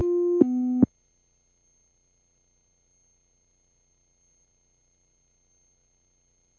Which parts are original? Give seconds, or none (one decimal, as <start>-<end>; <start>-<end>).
0.0-6.6